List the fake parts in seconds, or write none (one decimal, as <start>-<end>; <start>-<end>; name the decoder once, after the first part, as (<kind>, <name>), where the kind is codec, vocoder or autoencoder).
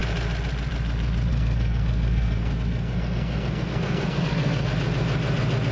1.3-4.7 (codec, SNAC)